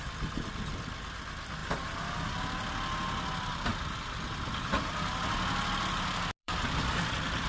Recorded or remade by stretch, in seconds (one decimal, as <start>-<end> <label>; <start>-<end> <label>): 0.0-3.7 recorded; 3.7-4.3 remade; 4.3-6.4 recorded; 6.4-7.1 remade; 7.1-7.5 recorded